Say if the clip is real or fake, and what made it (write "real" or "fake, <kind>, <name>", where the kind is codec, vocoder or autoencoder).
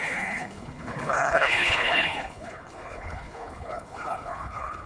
fake, codec, HILCodec